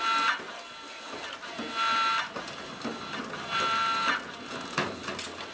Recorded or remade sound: recorded